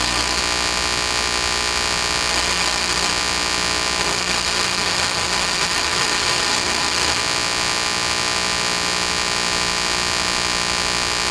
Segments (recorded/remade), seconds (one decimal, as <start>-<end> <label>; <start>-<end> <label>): 0.0-0.4 remade; 0.4-2.3 recorded; 2.3-3.1 remade; 3.1-4.0 recorded; 4.0-7.2 remade; 7.2-11.3 recorded